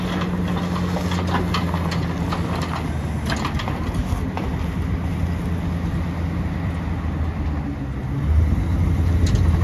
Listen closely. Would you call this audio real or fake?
real